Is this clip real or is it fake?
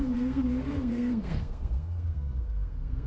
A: fake